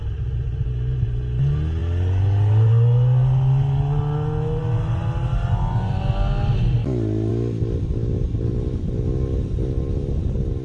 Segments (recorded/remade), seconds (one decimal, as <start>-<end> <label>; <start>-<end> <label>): 0.0-10.6 recorded